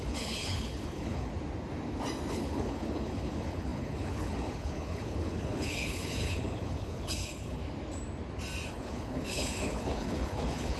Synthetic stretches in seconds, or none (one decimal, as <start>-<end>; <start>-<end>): 0.0-1.3; 2.3-7.6; 8.7-10.8